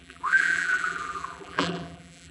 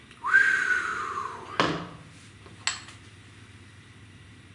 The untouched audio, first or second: second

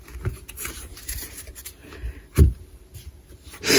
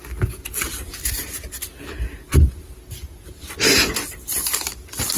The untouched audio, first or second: second